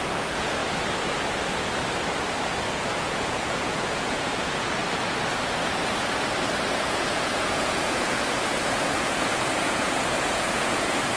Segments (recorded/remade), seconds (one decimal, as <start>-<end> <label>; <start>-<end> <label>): 0.0-0.6 remade; 0.6-2.7 recorded; 2.7-4.8 remade; 4.8-6.7 recorded; 6.7-11.2 remade